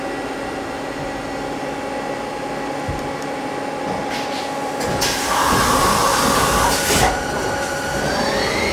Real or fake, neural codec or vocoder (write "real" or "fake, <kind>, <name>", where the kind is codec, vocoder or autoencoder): real